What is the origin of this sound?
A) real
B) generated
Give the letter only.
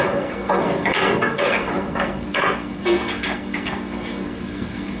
B